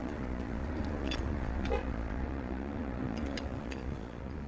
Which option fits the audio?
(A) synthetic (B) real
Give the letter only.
A